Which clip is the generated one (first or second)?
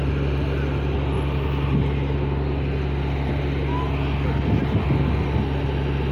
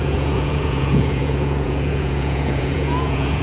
second